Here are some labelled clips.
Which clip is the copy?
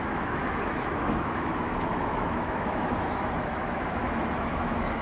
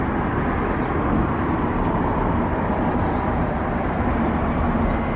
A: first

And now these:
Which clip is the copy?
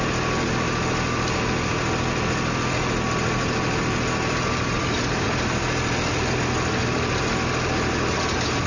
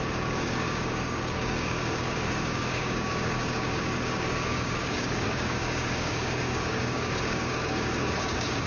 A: second